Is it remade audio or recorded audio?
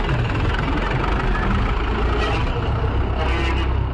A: recorded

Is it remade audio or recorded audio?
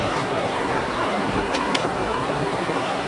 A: remade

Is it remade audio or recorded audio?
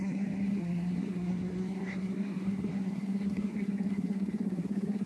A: remade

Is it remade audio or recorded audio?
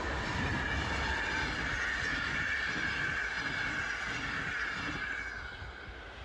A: recorded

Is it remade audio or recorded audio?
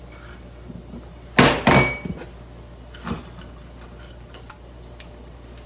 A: recorded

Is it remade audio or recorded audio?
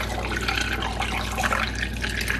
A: recorded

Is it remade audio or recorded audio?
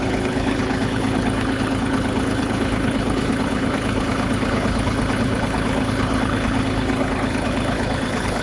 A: remade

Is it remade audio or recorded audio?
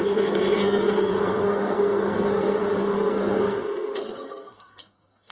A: remade